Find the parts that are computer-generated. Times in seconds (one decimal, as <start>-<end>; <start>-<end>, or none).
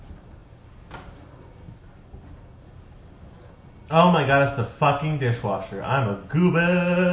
none